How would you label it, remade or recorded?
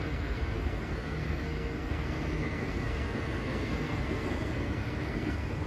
remade